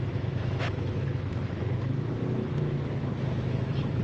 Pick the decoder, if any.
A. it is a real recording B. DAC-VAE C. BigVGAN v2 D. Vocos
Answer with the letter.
B